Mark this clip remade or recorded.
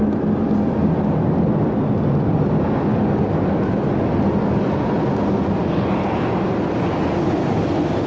recorded